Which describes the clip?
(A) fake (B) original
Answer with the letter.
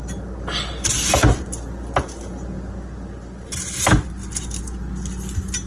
B